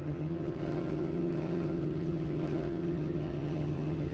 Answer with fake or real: fake